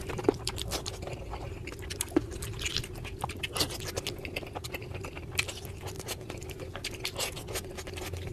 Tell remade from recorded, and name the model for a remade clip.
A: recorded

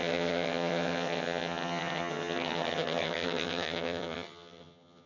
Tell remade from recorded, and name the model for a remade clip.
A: remade, vocoder, HiFi-GAN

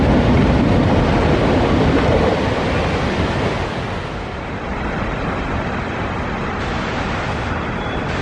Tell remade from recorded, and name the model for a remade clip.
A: recorded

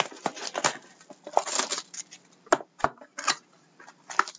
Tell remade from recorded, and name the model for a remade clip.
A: recorded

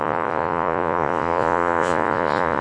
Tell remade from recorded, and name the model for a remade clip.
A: remade, vocoder, Vocos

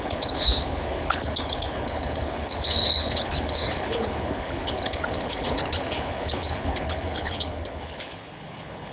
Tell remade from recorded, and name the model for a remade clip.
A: remade, codec, HILCodec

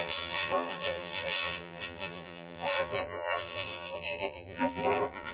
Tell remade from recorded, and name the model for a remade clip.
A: remade, vocoder, BigVGAN v2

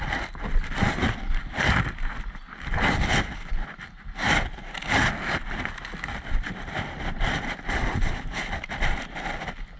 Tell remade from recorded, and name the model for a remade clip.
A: recorded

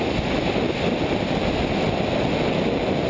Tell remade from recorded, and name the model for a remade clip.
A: recorded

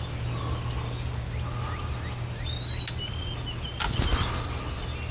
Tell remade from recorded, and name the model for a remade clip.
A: recorded